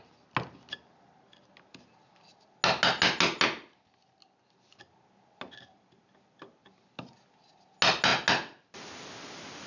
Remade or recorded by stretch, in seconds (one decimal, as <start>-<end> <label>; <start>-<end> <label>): 0.0-9.7 recorded